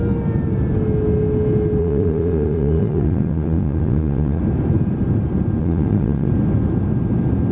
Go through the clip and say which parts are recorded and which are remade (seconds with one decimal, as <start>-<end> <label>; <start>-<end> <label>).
0.0-1.8 recorded; 1.8-4.4 remade; 4.4-5.6 recorded; 5.6-6.3 remade; 6.3-7.5 recorded